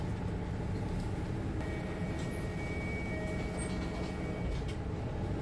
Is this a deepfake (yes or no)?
no